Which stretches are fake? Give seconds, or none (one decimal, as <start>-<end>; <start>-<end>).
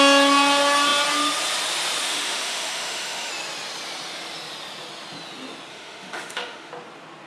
2.0-3.3; 5.7-6.7